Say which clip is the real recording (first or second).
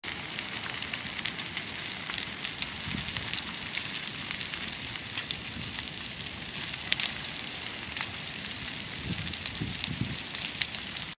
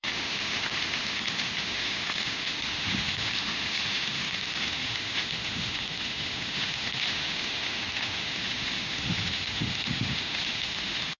first